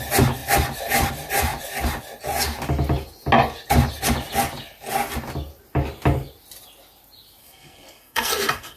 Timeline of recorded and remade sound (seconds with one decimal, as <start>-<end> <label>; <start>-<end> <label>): 0.0-7.4 recorded; 7.4-8.8 remade